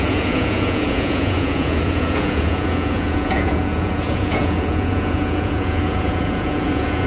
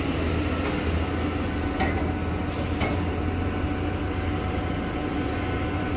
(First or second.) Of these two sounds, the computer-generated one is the first